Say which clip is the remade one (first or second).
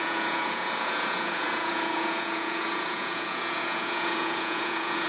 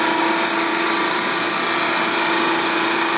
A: first